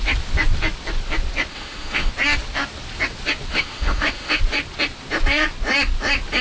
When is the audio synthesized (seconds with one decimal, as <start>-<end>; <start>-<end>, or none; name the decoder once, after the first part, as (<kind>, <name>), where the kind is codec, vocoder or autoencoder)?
1.5-2.1 (autoencoder, DAC-VAE); 3.5-4.4